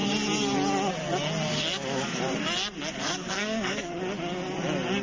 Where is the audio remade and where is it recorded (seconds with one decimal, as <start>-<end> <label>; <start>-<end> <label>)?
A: 0.0-1.5 recorded; 1.5-2.2 remade; 2.2-3.0 recorded; 3.0-3.9 remade; 3.9-5.0 recorded